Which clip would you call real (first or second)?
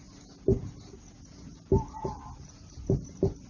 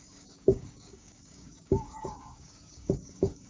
first